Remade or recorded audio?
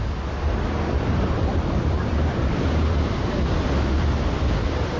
recorded